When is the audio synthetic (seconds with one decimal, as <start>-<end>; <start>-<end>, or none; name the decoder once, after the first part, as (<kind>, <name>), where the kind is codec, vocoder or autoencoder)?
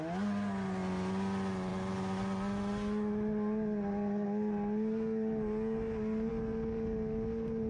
none